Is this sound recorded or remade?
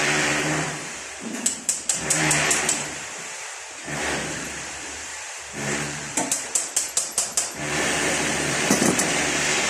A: remade